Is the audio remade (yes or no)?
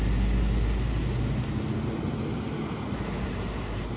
no